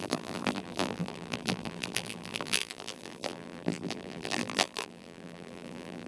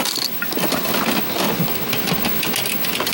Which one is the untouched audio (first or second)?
second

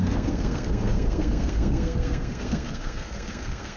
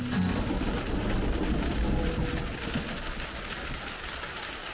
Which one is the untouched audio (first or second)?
second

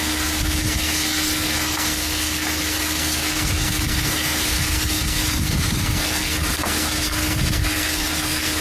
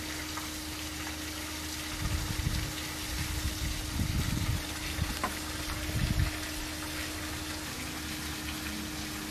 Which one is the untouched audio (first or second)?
second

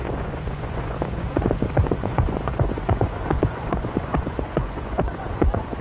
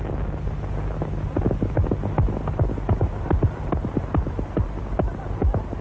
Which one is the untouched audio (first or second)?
second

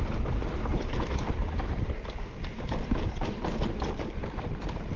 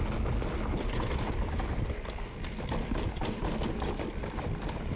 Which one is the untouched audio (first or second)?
second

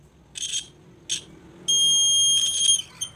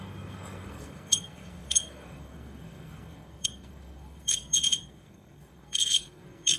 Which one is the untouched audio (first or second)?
first